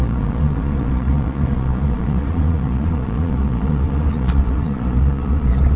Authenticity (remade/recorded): remade